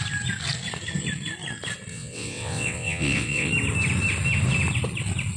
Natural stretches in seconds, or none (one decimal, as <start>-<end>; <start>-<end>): 0.0-1.9; 3.5-5.4